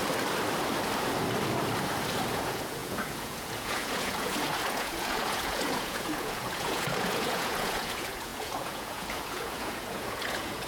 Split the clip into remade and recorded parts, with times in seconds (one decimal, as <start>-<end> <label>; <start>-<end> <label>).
0.0-2.3 recorded; 2.3-10.7 remade